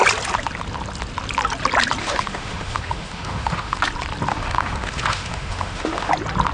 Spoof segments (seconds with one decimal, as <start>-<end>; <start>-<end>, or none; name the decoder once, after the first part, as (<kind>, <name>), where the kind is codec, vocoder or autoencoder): 2.0-3.8 (autoencoder, DAC-VAE); 4.3-6.1